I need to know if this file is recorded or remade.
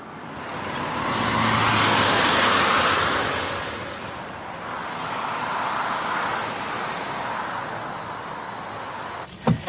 recorded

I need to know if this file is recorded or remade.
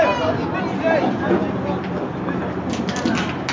recorded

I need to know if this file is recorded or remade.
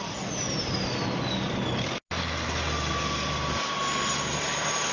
recorded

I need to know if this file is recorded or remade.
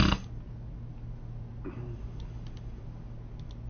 recorded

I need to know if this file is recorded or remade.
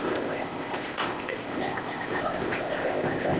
remade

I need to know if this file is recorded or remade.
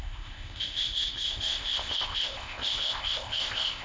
remade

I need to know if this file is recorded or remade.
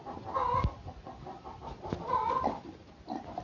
recorded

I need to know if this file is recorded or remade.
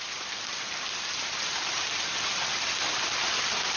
recorded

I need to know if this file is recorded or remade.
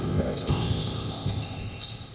remade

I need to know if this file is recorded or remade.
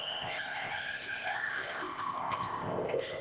remade